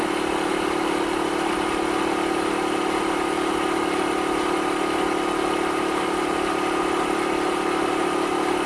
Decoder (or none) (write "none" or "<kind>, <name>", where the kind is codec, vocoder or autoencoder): none